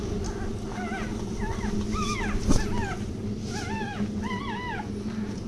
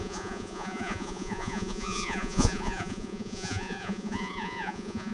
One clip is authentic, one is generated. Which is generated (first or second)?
second